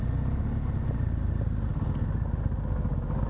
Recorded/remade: recorded